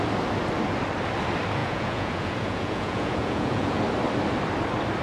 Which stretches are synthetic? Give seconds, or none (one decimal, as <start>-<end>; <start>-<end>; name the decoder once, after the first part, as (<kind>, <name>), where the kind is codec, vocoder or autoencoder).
1.6-3.8 (vocoder, Vocos)